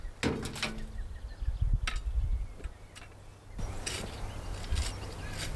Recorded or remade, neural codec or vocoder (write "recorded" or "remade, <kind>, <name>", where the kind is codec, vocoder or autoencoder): recorded